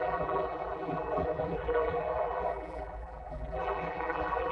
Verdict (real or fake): fake